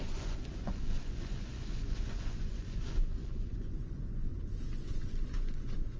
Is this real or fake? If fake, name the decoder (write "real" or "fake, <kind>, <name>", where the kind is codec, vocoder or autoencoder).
fake, vocoder, Vocos